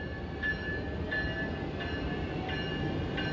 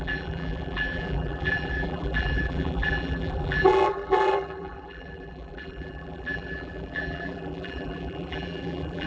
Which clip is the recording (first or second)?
first